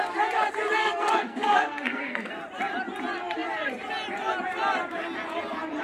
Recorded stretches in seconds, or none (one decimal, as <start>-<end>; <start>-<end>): 0.0-0.8; 2.3-5.8